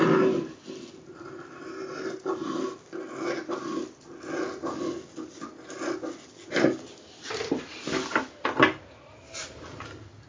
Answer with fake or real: real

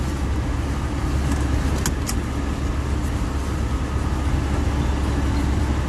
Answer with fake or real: real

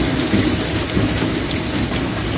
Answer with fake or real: real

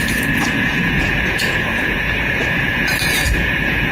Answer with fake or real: fake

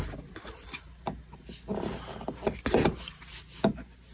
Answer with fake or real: real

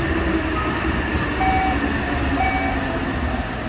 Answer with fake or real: real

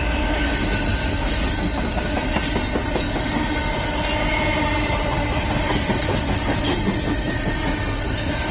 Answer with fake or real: real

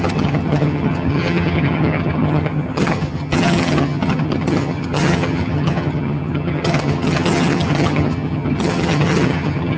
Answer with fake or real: fake